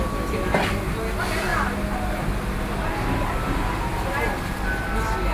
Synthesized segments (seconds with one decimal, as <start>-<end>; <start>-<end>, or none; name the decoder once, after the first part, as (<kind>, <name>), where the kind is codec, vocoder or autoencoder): none